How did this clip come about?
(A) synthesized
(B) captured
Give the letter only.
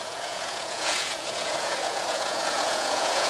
A